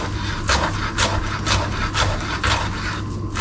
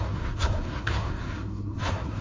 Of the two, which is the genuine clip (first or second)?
first